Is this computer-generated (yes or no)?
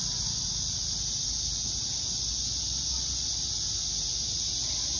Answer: no